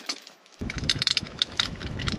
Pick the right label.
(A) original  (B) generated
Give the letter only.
B